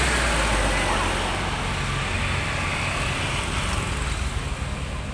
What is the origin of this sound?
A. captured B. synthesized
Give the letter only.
A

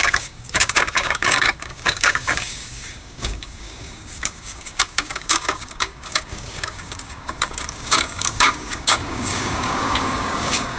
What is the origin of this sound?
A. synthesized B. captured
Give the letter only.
A